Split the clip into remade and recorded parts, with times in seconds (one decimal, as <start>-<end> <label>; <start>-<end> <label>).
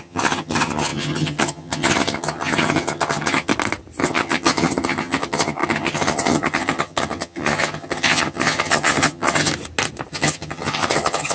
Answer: 0.0-3.5 remade; 3.5-4.0 recorded; 4.0-9.5 remade; 9.5-10.1 recorded; 10.1-11.3 remade